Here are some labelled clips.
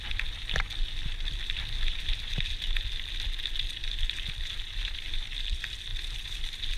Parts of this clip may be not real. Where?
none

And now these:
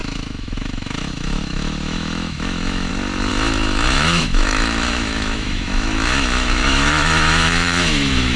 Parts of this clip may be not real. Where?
0.0-2.9 (autoencoder, DAC-VAE); 3.3-8.4

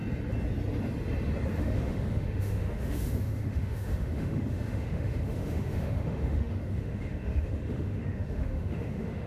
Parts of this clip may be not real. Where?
1.6-9.3 (autoencoder, DAC-VAE)

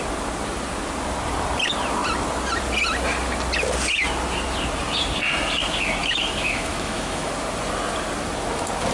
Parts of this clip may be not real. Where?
6.0-7.3 (autoencoder, DAC-VAE)